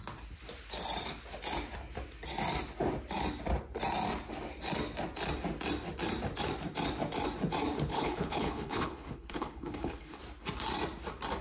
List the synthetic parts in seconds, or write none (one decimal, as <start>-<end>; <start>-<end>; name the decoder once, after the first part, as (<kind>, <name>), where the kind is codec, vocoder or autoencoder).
7.9-10.2 (codec, HILCodec)